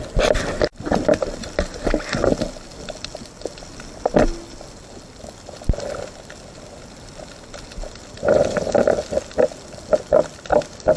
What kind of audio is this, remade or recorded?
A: recorded